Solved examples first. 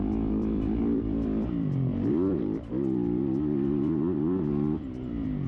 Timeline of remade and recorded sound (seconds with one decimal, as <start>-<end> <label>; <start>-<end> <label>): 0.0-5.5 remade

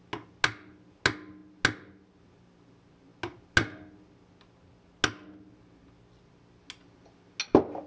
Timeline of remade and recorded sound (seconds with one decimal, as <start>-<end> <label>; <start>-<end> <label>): 0.0-7.9 recorded

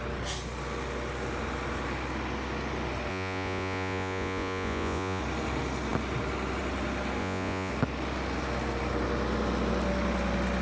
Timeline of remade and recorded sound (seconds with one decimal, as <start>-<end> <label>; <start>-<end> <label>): 0.0-3.1 recorded; 3.1-5.2 remade; 5.2-7.2 recorded; 7.2-7.7 remade; 7.7-10.6 recorded

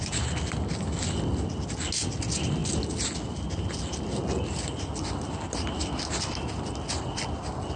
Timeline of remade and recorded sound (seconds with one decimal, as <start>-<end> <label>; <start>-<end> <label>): 0.0-7.8 recorded

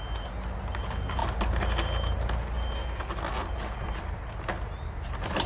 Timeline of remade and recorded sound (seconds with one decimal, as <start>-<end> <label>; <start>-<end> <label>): 0.0-5.5 recorded

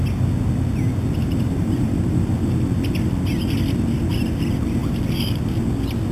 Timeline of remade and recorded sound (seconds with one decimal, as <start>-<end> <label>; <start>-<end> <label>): 0.0-1.2 recorded; 1.2-2.3 remade; 2.3-4.8 recorded; 4.8-5.4 remade; 5.4-6.1 recorded

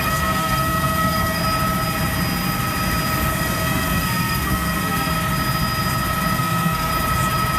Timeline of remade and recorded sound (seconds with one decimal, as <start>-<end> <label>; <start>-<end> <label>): 0.0-1.4 remade; 1.4-3.3 recorded; 3.3-5.1 remade; 5.1-6.3 recorded; 6.3-6.9 remade; 6.9-7.6 recorded

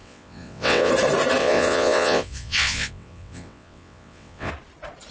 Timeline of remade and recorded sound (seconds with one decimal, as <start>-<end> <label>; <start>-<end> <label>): 0.0-0.9 remade; 0.9-1.4 recorded; 1.4-4.5 remade; 4.5-5.1 recorded